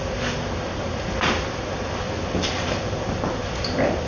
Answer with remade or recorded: recorded